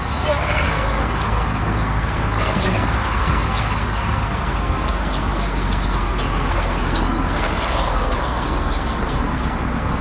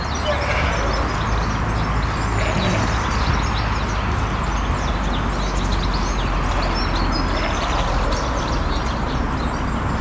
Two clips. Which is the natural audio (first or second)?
second